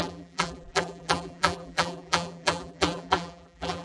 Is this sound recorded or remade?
remade